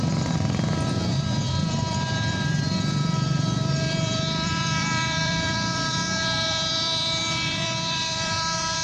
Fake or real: fake